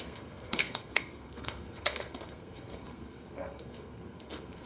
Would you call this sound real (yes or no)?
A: no